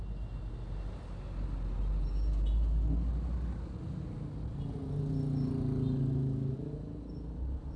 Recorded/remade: recorded